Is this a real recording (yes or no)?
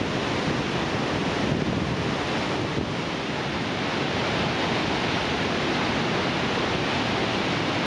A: yes